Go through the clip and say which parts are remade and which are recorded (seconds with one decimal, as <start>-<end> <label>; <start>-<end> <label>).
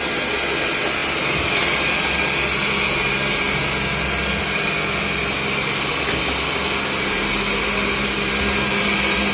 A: 0.0-9.3 recorded